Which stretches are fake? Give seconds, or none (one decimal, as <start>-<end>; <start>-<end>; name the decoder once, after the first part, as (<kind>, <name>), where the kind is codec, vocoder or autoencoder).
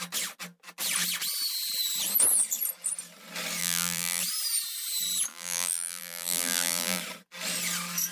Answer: 3.6-4.2 (vocoder, BigVGAN v2); 5.3-7.0